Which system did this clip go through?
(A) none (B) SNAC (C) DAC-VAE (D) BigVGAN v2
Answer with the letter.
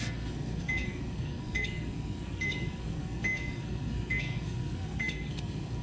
B